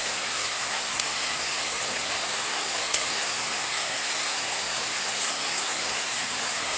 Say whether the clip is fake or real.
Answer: fake